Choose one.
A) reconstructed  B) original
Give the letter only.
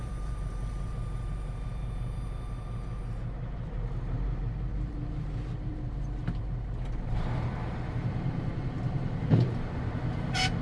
A